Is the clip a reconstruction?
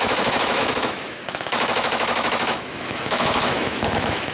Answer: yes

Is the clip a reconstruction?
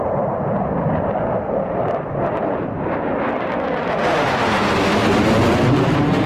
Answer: no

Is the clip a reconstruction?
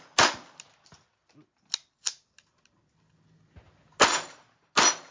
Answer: no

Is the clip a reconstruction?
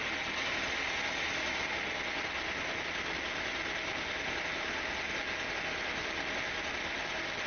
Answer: no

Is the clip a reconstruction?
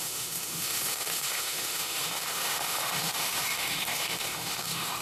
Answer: yes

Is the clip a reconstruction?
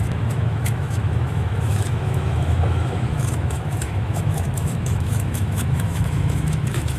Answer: yes